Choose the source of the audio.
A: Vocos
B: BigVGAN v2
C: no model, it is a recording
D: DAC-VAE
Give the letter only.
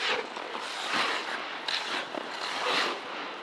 C